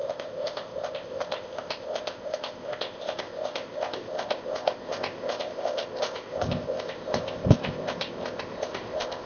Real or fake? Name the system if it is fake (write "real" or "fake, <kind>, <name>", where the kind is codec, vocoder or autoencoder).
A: fake, codec, ZipCodec